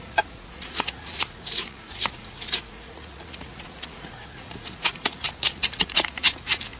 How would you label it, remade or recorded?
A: remade